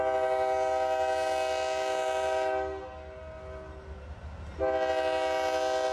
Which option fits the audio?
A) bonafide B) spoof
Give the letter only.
A